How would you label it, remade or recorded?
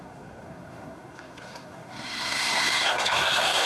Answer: remade